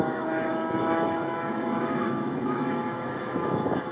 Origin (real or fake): fake